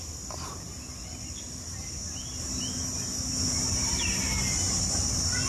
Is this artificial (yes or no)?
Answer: no